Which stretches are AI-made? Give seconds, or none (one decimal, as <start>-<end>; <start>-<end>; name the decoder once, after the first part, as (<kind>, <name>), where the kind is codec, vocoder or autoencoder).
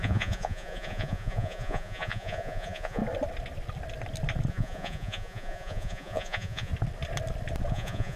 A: 0.0-3.0 (vocoder, Vocos); 4.5-6.7; 7.7-8.2